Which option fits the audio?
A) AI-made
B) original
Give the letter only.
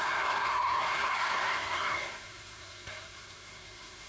A